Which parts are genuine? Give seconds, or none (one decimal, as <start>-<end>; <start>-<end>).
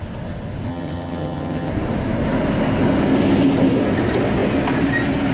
0.0-0.7; 1.7-5.3